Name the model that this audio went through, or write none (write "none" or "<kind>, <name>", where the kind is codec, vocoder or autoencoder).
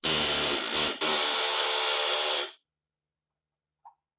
none